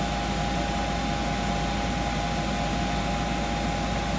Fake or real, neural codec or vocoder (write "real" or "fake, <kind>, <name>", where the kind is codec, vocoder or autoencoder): real